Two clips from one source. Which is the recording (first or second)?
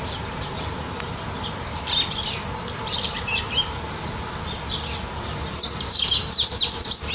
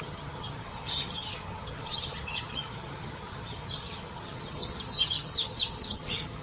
first